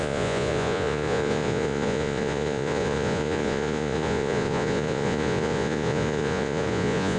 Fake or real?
fake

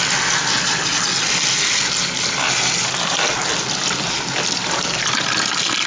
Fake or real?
real